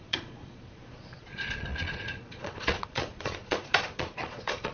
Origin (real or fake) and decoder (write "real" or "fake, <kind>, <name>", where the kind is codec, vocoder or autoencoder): fake, vocoder, Vocos